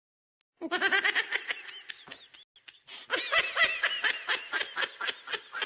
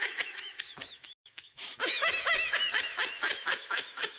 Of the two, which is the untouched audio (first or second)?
first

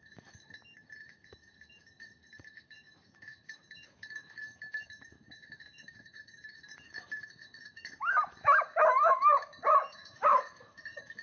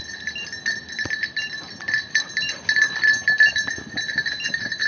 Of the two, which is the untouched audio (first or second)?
second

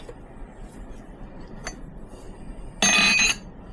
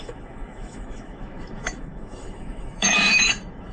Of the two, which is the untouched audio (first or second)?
first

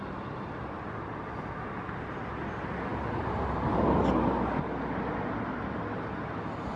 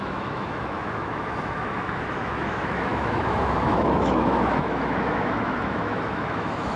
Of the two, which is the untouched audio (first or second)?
first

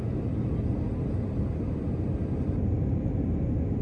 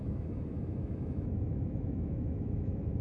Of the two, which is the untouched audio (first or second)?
first